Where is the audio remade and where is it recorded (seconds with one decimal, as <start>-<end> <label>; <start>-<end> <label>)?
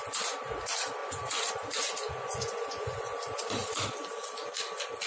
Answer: 0.0-1.0 recorded; 1.0-1.5 remade; 1.5-2.1 recorded; 2.1-3.2 remade; 3.2-5.1 recorded